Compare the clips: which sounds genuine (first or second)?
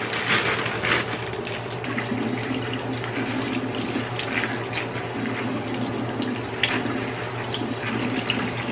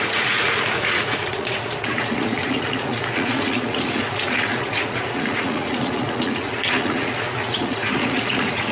first